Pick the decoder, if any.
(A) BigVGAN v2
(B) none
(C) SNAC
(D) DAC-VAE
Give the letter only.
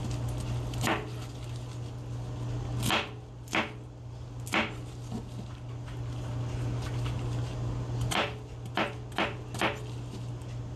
B